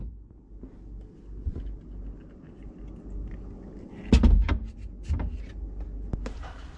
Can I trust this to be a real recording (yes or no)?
yes